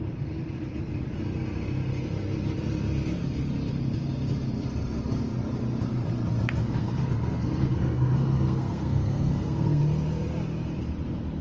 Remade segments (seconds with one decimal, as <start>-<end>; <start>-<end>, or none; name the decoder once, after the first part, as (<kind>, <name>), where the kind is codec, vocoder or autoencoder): 6.6-9.8 (codec, SNAC)

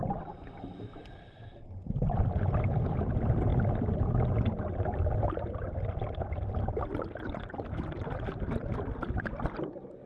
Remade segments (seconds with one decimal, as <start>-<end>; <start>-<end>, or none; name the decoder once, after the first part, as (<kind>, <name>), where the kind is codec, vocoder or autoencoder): none